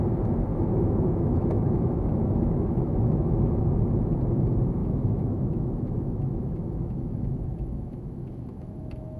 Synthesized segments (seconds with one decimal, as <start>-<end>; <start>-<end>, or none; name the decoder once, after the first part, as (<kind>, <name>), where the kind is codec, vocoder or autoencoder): 0.5-3.8 (autoencoder, DAC-VAE); 4.8-9.2